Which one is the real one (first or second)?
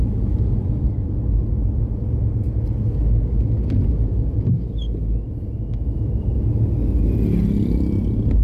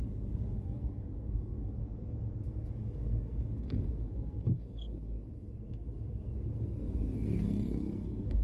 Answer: first